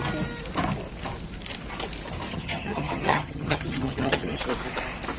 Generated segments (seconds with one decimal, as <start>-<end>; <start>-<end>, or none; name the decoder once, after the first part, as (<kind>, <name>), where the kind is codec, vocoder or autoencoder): 2.3-4.4 (vocoder, HiFi-GAN)